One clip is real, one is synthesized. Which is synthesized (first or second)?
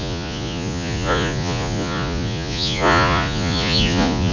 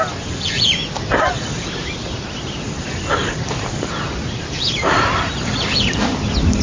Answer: first